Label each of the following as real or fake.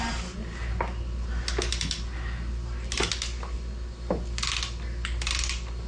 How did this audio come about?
real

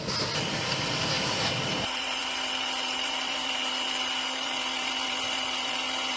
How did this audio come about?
fake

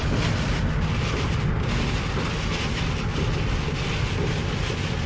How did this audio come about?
real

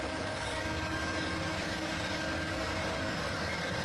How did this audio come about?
fake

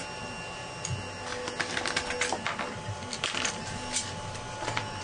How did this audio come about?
real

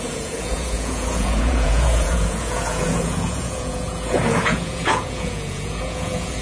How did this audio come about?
fake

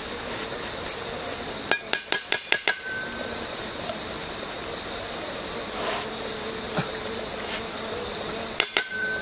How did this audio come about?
fake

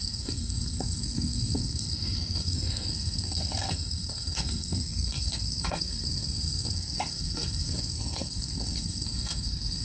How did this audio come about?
fake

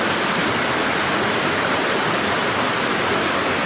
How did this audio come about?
real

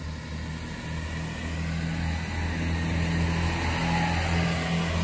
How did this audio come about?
real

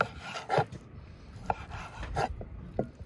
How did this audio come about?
real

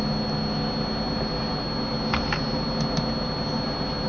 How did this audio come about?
real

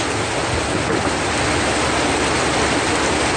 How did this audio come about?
real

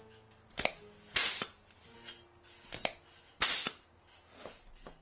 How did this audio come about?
real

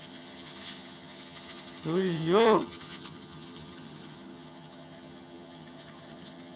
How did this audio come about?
fake